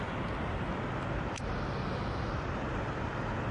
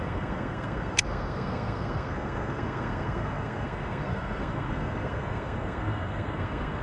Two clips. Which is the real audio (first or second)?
first